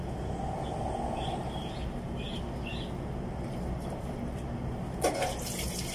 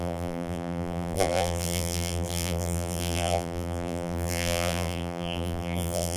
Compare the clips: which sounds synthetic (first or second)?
second